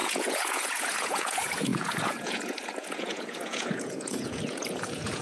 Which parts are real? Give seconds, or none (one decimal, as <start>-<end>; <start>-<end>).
none